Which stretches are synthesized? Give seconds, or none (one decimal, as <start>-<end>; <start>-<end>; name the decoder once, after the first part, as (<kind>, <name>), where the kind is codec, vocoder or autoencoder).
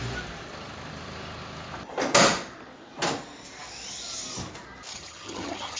4.9-5.8 (vocoder, HiFi-GAN)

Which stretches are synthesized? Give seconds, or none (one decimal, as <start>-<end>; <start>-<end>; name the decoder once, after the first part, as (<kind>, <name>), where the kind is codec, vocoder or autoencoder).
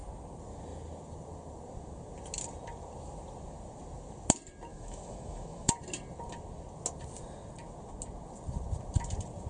4.7-5.7 (autoencoder, DAC-VAE)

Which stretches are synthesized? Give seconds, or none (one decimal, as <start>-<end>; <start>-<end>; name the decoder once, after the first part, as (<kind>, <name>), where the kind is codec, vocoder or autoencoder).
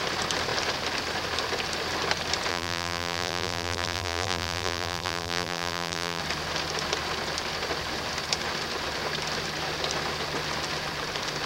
2.5-6.2 (vocoder, BigVGAN v2)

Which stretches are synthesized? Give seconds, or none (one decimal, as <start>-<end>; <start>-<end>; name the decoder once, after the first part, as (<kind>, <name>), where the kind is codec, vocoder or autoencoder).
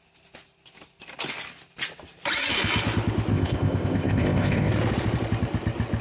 3.3-4.7 (codec, ZipCodec)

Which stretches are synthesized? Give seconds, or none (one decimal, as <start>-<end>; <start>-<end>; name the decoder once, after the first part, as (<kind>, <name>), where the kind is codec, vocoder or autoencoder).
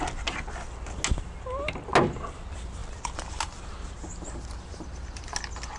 none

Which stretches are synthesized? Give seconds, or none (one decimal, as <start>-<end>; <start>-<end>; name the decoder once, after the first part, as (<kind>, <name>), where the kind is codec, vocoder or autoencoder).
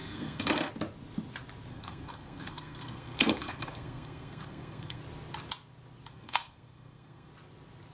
0.0-0.7 (codec, SNAC); 1.7-5.0; 6.1-7.3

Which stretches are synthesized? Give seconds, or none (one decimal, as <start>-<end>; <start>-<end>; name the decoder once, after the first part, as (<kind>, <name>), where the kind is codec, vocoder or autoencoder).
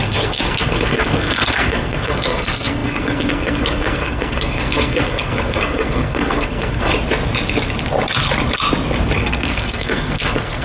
0.0-6.9 (codec, SNAC); 9.2-10.6